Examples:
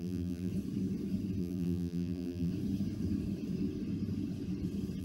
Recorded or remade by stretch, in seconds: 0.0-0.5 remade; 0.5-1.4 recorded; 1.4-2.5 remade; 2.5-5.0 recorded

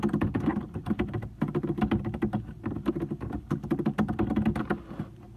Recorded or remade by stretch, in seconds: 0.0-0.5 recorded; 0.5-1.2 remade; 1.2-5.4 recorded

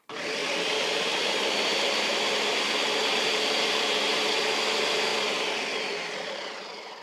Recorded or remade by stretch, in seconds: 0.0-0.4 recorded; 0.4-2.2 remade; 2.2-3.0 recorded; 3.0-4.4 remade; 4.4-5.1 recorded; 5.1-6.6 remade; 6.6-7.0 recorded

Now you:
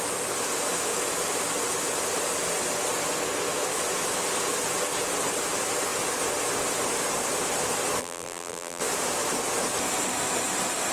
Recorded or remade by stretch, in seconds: 0.0-8.0 recorded; 8.0-8.8 remade; 8.8-10.9 recorded

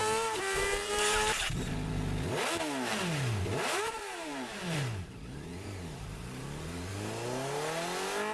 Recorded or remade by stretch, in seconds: 0.0-1.9 remade; 1.9-2.9 recorded; 2.9-6.9 remade; 6.9-8.3 recorded

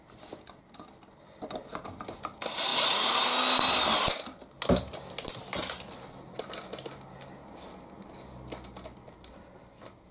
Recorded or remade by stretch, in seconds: 0.0-10.1 recorded